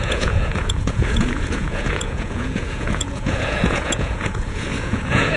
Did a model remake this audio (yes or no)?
yes